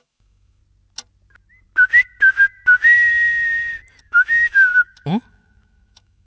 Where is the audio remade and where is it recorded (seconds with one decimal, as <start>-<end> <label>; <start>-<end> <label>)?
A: 0.0-0.6 remade; 0.6-4.0 recorded; 4.0-6.3 remade